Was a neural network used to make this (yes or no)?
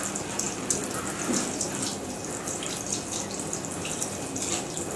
no